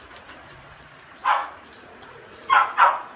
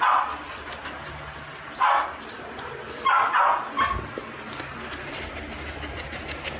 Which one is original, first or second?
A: second